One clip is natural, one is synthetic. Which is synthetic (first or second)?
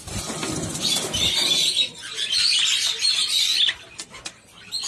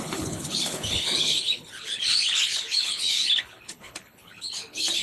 second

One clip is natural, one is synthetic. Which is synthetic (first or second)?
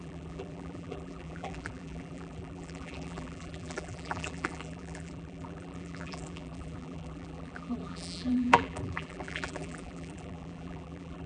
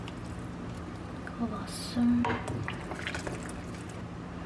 first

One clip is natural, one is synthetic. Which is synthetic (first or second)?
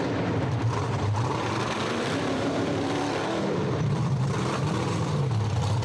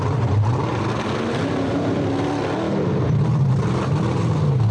first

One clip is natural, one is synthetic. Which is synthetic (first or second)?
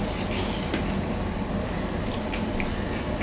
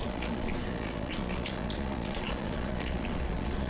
second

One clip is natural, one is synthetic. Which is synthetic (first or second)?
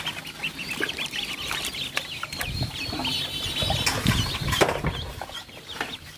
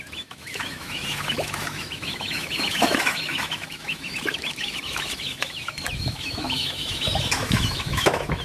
second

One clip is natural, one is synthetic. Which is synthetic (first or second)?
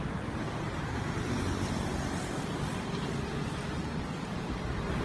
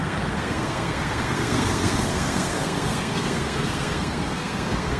second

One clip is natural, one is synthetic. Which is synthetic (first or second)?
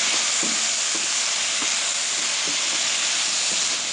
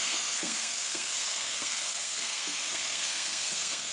second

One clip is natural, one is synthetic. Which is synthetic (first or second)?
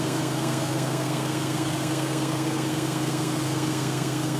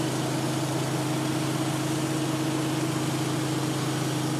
first